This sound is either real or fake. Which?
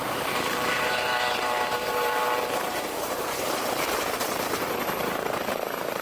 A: fake